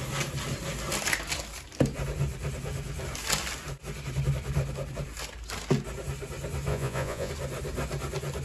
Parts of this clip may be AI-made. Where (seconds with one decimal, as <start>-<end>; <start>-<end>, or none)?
6.7-7.3